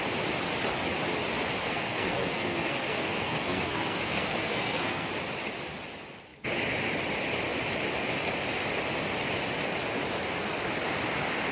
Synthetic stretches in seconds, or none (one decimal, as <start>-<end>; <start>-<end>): 1.6-5.1